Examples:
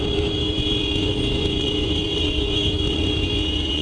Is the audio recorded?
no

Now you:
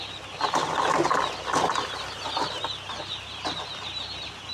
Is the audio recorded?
yes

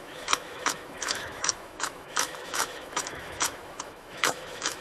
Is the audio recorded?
no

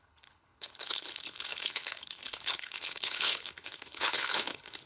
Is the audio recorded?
no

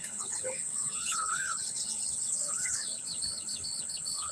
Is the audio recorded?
no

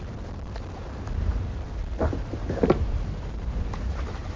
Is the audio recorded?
no